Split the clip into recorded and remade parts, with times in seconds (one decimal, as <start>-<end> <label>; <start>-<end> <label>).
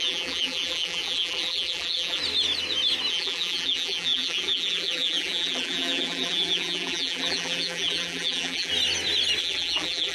0.0-2.2 remade; 2.2-3.1 recorded; 3.1-8.7 remade; 8.7-9.4 recorded; 9.4-10.1 remade